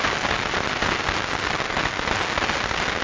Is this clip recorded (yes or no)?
yes